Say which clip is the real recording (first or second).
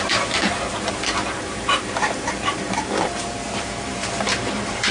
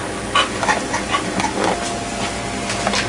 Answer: second